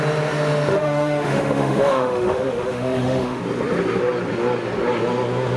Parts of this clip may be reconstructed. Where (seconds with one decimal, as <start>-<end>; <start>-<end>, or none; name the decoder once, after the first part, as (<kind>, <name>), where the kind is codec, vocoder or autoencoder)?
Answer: 0.7-3.4 (autoencoder, DAC-VAE)

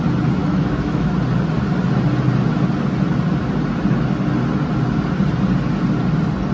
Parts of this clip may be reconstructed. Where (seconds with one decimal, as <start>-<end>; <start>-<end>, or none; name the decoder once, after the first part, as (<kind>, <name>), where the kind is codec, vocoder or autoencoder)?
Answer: 0.4-1.1 (autoencoder, DAC-VAE)

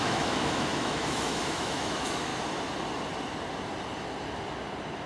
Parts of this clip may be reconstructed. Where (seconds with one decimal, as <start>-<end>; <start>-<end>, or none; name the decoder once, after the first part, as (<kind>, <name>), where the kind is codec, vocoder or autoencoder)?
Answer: 0.0-2.3 (autoencoder, DAC-VAE)

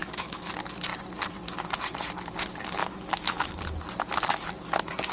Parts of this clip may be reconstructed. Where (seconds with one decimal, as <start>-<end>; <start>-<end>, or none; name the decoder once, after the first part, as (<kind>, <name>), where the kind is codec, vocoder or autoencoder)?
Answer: 0.0-0.5 (autoencoder, DAC-VAE); 2.8-3.6

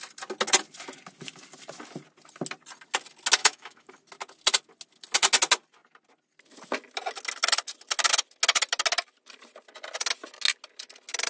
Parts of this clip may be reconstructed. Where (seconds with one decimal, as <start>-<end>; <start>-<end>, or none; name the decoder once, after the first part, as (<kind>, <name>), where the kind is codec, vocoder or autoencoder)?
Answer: 3.4-3.9 (autoencoder, DAC-VAE)

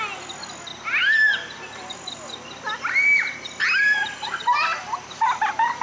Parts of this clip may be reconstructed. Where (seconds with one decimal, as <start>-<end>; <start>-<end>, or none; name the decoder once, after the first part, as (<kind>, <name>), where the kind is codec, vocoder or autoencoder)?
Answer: none

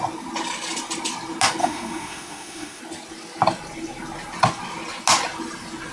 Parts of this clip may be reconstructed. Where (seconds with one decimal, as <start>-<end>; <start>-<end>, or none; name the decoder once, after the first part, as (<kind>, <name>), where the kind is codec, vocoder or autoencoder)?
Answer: 1.6-2.8 (autoencoder, DAC-VAE)

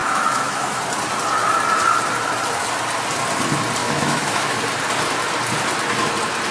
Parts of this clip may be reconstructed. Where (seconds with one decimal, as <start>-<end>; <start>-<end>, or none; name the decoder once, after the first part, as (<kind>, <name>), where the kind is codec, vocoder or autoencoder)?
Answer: 0.0-0.8 (autoencoder, DAC-VAE); 3.8-4.6